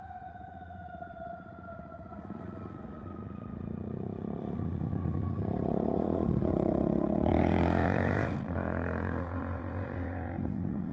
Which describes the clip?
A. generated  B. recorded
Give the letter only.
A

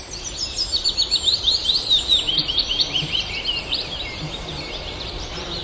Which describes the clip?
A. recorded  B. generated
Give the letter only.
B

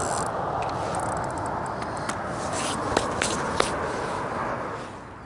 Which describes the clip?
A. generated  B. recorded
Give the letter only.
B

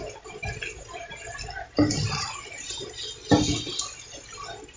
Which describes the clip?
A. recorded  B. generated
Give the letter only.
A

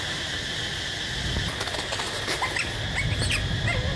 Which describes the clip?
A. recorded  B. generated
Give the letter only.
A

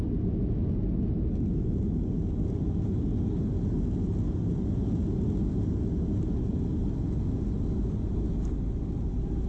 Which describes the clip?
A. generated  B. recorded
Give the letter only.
B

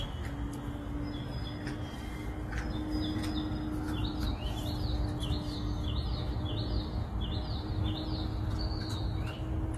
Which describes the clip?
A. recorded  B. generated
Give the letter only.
A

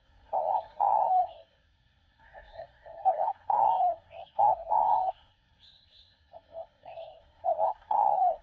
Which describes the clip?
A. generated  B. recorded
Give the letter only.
A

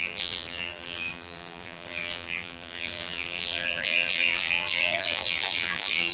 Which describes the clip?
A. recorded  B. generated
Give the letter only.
B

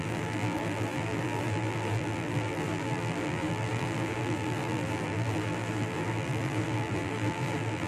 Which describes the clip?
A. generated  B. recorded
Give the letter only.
A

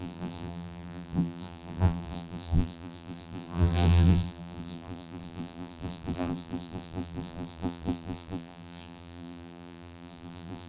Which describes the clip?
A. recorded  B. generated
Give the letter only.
B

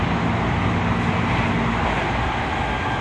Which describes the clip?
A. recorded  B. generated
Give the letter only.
A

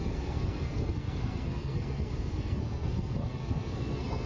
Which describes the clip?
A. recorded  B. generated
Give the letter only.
B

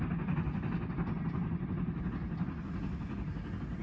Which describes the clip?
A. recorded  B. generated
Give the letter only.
A